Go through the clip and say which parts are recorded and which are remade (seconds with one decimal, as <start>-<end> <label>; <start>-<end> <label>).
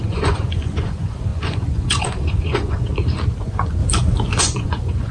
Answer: 0.0-2.9 remade; 2.9-3.4 recorded; 3.4-3.8 remade; 3.8-4.4 recorded; 4.4-5.1 remade